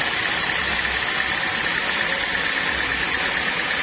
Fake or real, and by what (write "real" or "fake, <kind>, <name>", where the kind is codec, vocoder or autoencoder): real